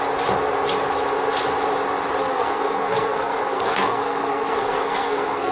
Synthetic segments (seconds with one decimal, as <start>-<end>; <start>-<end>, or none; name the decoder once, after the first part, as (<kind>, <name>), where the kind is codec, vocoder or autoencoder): 2.2-5.5 (codec, SNAC)